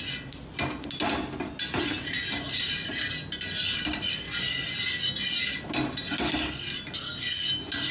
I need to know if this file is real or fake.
real